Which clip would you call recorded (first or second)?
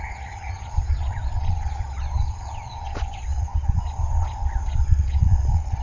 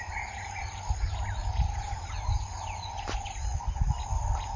second